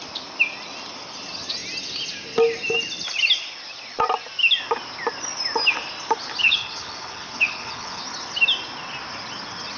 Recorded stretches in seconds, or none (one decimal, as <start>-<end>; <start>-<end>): 0.0-6.4; 8.0-9.8

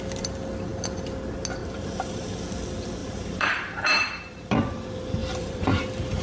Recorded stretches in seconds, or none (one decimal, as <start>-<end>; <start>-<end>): 0.0-1.6; 2.4-3.0; 4.5-5.2; 5.8-6.2

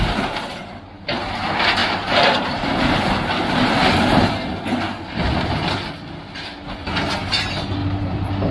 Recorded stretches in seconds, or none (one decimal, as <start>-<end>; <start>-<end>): 0.0-1.8; 4.3-7.8

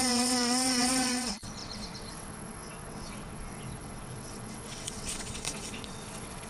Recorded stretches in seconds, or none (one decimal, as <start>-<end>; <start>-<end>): none

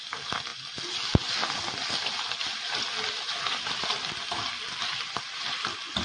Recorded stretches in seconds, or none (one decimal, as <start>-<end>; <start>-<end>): 0.0-6.0

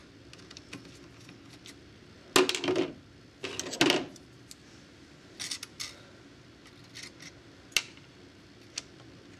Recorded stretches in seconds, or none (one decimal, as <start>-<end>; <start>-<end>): 0.0-9.4